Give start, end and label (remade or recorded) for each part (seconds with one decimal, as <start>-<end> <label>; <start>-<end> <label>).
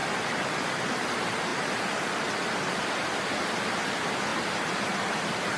0.0-0.9 remade; 0.9-1.5 recorded; 1.5-3.6 remade; 3.6-4.3 recorded; 4.3-5.6 remade